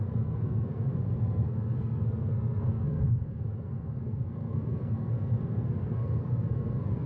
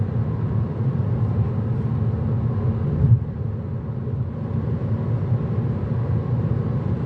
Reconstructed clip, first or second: first